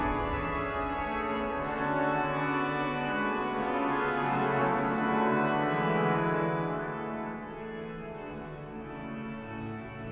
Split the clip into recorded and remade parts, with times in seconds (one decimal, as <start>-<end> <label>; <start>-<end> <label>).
0.0-10.1 recorded